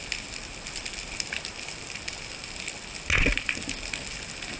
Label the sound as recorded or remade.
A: recorded